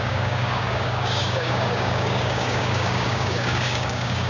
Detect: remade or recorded remade